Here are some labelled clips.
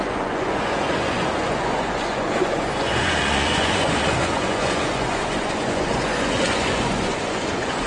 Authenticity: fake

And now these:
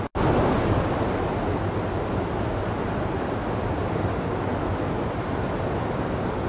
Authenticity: real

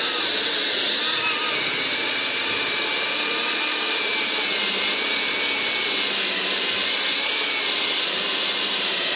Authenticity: real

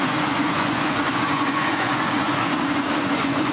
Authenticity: fake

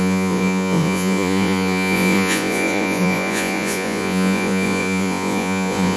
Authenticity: fake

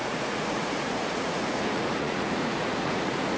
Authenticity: fake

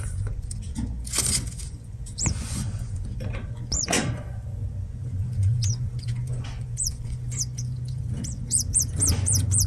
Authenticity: fake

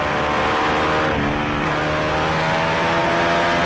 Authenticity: real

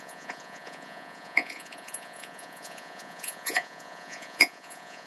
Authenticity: fake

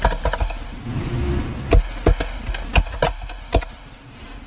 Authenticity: real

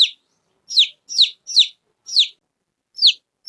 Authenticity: real